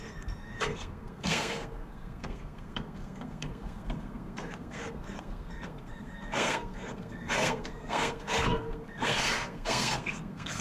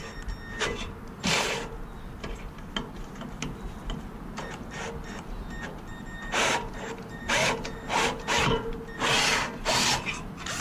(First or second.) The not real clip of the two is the first